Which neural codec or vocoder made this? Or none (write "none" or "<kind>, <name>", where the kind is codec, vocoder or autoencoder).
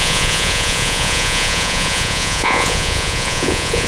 vocoder, Vocos